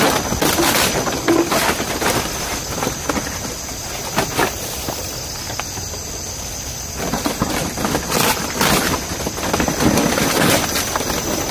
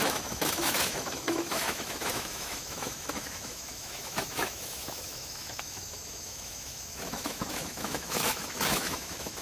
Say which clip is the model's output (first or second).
second